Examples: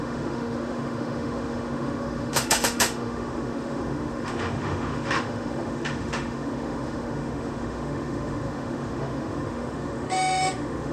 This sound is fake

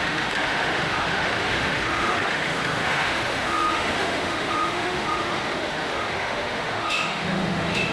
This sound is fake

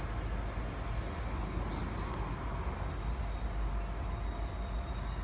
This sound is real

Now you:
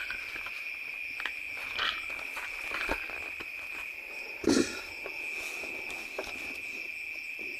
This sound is real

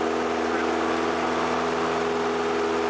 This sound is real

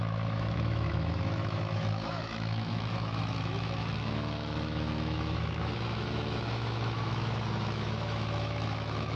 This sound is fake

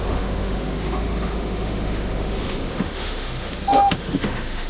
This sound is fake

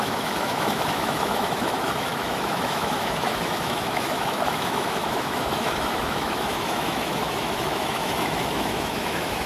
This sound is fake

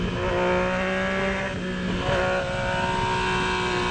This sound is real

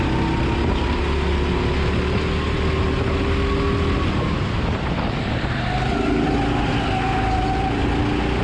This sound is real